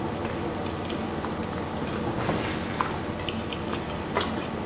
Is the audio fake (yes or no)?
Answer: no